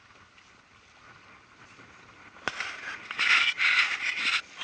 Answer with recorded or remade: recorded